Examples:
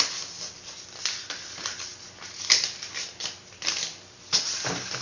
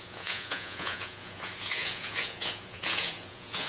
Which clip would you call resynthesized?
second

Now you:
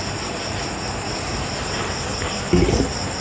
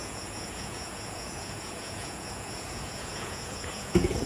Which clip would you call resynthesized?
second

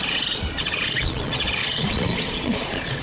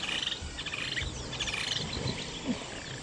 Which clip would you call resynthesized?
first